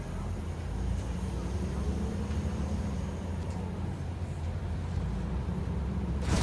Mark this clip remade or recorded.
remade